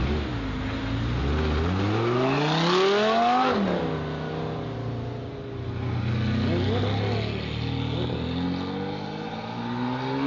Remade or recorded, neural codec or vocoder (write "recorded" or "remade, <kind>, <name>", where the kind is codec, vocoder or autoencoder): recorded